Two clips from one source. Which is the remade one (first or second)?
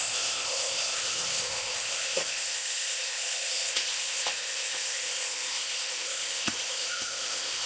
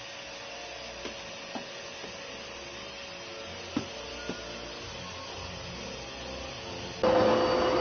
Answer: first